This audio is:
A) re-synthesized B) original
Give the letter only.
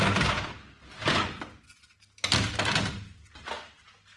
B